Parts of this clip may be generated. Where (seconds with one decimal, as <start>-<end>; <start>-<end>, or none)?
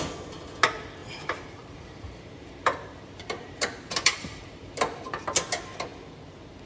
1.0-5.0